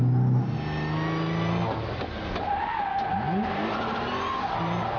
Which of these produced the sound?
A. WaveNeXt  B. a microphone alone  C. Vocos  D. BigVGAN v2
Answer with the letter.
B